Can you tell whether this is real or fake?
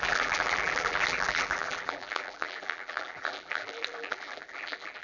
fake